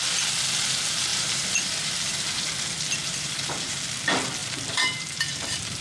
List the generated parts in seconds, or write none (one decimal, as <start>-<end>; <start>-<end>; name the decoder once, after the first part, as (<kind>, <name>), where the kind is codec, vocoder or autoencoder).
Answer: 1.1-2.5 (vocoder, BigVGAN v2); 3.0-3.8; 4.4-5.8